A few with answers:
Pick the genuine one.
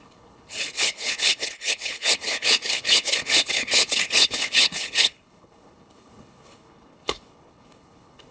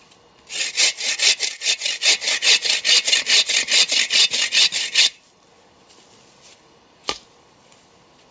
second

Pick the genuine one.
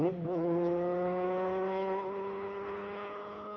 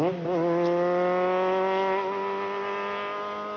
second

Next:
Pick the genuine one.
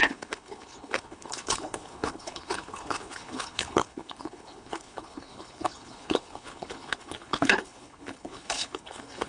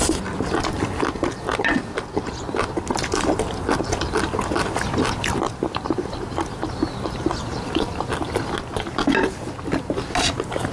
second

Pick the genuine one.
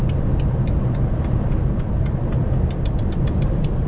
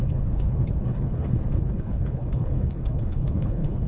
first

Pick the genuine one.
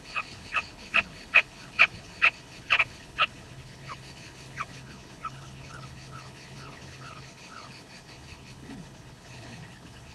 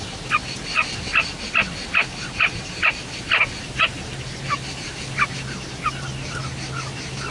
second